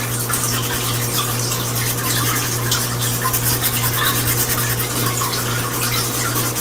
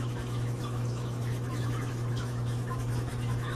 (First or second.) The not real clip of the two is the second